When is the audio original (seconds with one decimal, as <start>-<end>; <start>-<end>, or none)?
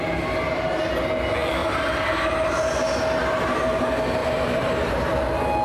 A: 0.0-1.6; 2.7-3.2; 3.8-4.2; 4.8-5.6